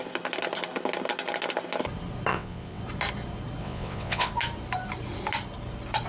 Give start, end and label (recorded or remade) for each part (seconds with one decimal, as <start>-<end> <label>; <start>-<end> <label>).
0.0-2.3 recorded; 2.3-2.8 remade; 2.8-3.6 recorded; 3.6-4.3 remade; 4.3-6.1 recorded